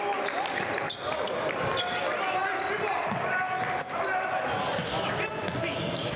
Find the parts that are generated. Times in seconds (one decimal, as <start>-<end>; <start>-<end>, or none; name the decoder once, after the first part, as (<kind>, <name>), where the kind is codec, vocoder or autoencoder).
none